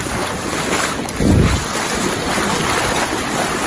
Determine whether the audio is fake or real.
real